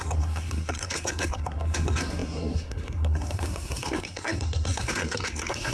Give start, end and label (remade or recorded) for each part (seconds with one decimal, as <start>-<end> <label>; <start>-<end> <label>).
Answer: 0.0-5.7 remade